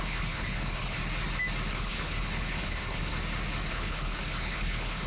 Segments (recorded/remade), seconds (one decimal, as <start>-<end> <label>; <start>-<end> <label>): 0.0-1.0 remade; 1.0-1.7 recorded; 1.7-3.1 remade; 3.1-3.7 recorded; 3.7-5.1 remade